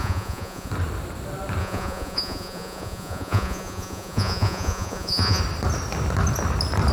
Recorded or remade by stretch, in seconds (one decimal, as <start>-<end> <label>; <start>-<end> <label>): 0.0-0.7 remade; 0.7-1.6 recorded; 1.6-5.4 remade; 5.4-6.9 recorded